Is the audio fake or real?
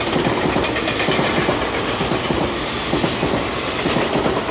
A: real